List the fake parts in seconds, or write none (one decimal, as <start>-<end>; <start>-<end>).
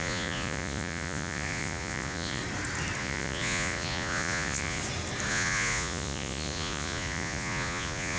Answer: 0.0-2.4; 3.0-4.8; 5.3-8.2